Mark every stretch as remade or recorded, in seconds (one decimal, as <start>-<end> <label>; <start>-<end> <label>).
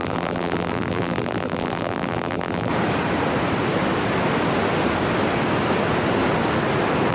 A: 0.0-2.7 remade; 2.7-7.1 recorded